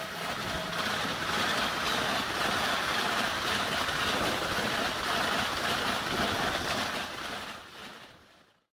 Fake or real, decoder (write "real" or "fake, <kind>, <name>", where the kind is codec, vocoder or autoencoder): real